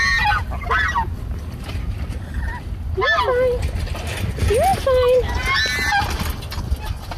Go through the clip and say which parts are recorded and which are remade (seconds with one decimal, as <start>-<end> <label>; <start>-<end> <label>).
0.0-7.2 recorded